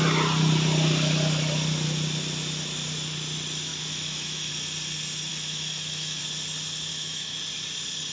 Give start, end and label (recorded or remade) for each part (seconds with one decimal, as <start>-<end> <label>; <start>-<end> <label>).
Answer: 0.0-3.7 recorded; 3.7-4.5 remade; 4.5-5.3 recorded; 5.3-6.2 remade; 6.2-6.9 recorded; 6.9-7.4 remade; 7.4-8.1 recorded